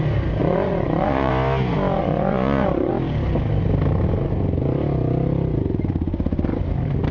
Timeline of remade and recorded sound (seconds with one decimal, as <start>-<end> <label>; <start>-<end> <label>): 0.0-0.4 recorded; 0.4-1.3 remade; 1.3-2.0 recorded; 2.0-2.9 remade; 2.9-7.1 recorded